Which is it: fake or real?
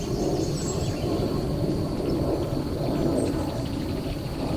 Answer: real